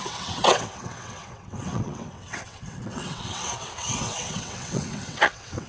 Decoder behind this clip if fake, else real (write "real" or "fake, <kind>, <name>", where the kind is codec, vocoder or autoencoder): fake, vocoder, WaveNeXt